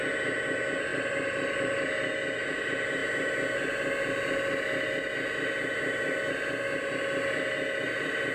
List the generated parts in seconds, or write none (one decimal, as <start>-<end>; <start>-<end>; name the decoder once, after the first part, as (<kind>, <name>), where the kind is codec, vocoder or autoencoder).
0.9-1.8 (vocoder, BigVGAN v2)